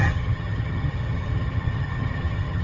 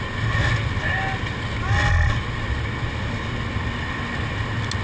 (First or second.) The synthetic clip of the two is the first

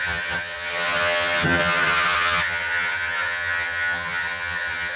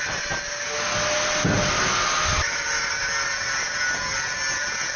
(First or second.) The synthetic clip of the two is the first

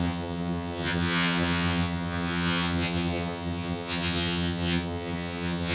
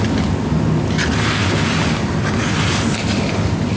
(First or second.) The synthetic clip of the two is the first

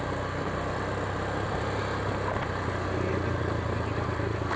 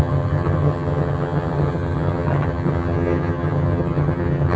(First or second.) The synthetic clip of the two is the second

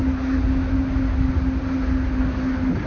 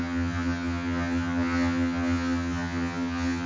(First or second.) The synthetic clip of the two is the second